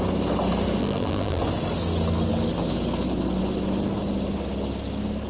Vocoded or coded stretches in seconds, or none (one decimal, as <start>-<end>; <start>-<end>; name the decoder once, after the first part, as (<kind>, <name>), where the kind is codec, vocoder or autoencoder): 0.8-1.4 (vocoder, BigVGAN v2)